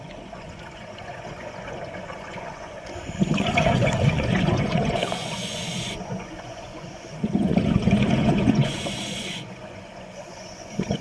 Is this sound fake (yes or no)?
yes